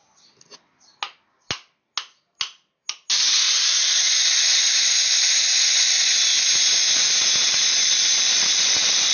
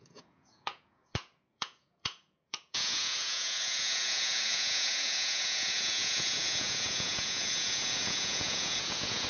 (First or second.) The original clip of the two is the first